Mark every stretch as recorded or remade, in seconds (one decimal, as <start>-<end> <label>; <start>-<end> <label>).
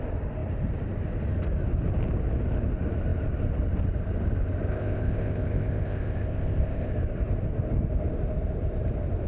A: 0.0-4.7 recorded; 4.7-6.9 remade; 6.9-9.3 recorded